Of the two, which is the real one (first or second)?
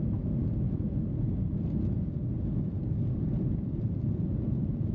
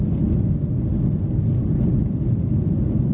second